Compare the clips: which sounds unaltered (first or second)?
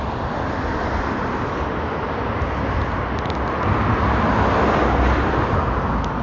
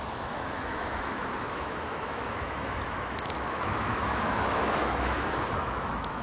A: first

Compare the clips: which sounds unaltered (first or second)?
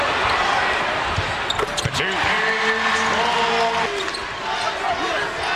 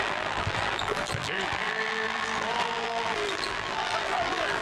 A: first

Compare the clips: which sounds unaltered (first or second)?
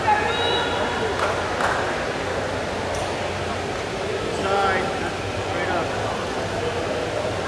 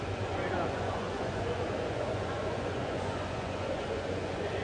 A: first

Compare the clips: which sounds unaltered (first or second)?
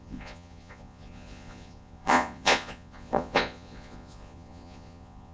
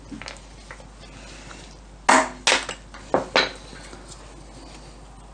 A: second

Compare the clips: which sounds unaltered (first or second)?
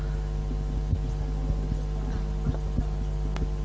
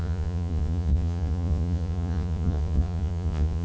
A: first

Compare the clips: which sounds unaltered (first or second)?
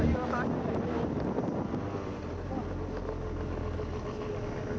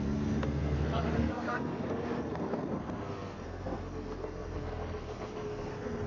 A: first